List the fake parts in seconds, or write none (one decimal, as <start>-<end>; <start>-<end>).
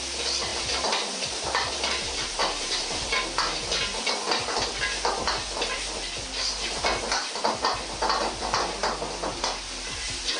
0.5-1.7